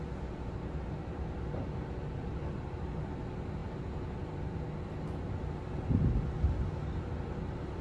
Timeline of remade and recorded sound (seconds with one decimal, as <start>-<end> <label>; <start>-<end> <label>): 0.0-7.8 recorded